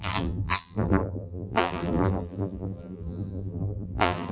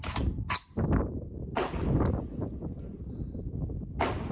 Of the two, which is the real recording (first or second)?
second